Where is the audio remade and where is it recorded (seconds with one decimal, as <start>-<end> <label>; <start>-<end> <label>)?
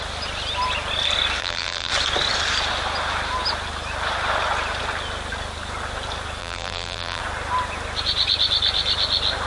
0.0-1.4 recorded; 1.4-1.9 remade; 1.9-6.4 recorded; 6.4-7.2 remade; 7.2-9.5 recorded